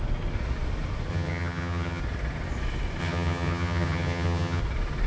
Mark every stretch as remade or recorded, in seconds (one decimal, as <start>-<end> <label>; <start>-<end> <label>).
0.0-1.1 recorded; 1.1-2.0 remade; 2.0-3.0 recorded; 3.0-4.6 remade; 4.6-5.1 recorded